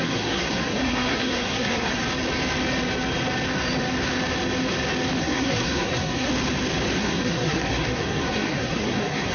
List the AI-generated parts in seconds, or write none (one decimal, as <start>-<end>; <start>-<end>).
0.0-2.0; 5.2-6.3; 7.0-9.3